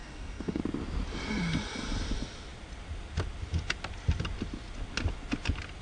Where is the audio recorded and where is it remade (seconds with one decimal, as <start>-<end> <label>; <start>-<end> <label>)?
0.0-0.6 remade; 0.6-5.8 recorded